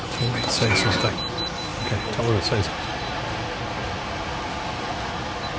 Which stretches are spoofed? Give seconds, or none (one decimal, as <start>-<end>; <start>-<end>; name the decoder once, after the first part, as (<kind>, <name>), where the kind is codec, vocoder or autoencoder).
none